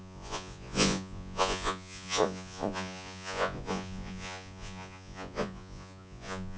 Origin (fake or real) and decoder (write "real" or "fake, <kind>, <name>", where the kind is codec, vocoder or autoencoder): fake, vocoder, Vocos